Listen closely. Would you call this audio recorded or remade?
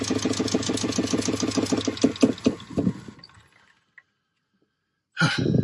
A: recorded